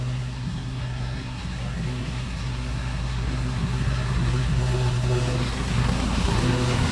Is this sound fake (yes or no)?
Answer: yes